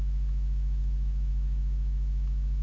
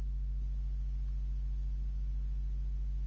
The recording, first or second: second